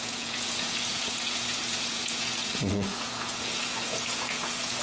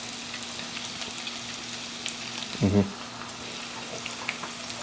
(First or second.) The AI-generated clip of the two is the first